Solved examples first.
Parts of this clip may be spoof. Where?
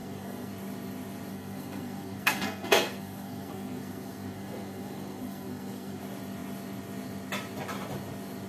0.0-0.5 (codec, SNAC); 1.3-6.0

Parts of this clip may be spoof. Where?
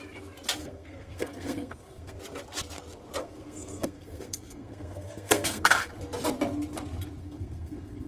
0.6-2.2 (codec, SNAC); 3.2-5.9; 7.2-8.1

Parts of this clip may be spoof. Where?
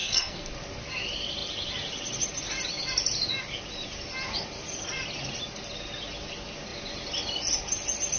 0.0-0.5 (codec, SNAC)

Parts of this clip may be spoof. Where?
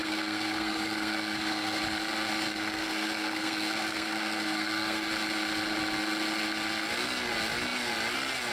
0.0-1.8 (codec, SNAC); 2.5-5.1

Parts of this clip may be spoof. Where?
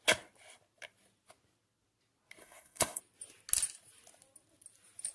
2.4-3.0 (codec, SNAC)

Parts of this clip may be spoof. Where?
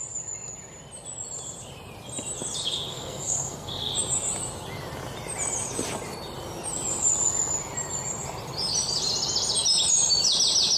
2.9-3.9 (codec, SNAC)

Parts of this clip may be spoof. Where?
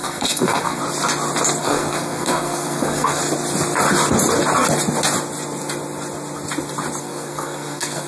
0.0-0.8 (codec, SNAC); 1.6-3.2; 7.0-8.1